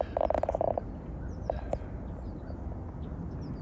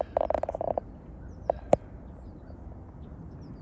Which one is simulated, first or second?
second